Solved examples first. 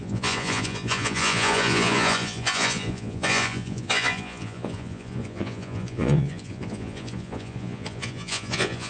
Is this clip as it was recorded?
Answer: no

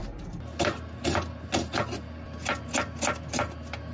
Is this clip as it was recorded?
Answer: yes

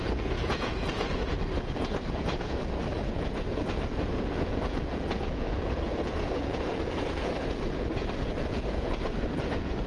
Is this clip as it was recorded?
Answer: no